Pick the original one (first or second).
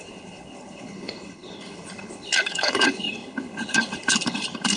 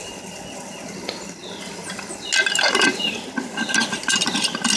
second